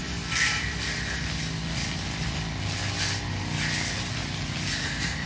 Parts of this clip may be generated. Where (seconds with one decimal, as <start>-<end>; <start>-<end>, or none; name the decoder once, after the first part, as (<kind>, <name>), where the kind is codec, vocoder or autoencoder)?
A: 4.8-5.3 (codec, SNAC)

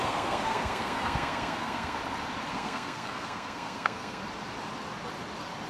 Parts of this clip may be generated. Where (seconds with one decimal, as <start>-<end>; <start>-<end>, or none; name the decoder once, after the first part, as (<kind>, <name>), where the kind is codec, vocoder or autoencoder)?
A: 0.0-2.0 (codec, SNAC); 2.5-4.2